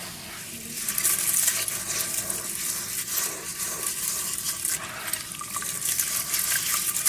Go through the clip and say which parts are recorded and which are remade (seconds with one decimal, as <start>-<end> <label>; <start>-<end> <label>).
0.0-7.1 recorded